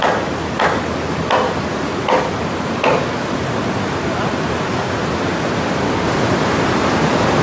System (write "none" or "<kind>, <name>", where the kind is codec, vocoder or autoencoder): none